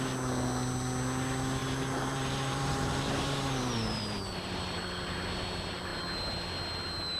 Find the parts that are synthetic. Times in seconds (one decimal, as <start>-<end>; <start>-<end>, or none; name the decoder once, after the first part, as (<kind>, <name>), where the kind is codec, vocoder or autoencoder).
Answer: 1.6-4.8 (vocoder, BigVGAN v2)